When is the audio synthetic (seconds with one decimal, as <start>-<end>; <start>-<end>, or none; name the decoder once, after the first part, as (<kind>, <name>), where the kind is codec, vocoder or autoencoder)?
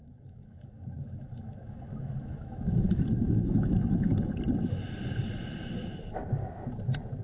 0.0-4.3 (autoencoder, DAC-VAE)